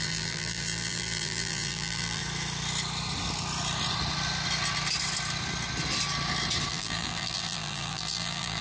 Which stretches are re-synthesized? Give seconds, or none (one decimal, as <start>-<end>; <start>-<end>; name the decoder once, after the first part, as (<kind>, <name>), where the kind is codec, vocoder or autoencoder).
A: 0.0-2.2 (vocoder, BigVGAN v2); 6.7-8.6

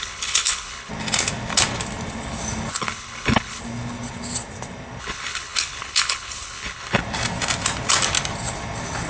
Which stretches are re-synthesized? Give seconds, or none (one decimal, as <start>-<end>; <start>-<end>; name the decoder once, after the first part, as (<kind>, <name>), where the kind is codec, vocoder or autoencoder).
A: 0.0-0.9 (codec, HILCodec); 2.7-3.6; 5.0-7.0

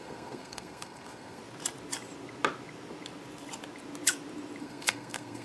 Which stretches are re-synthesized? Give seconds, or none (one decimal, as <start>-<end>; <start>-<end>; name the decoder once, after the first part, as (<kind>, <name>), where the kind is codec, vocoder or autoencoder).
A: 0.0-1.4 (codec, SNAC); 4.6-5.4